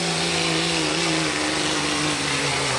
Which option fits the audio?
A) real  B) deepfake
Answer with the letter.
A